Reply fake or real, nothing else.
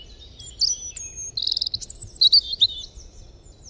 real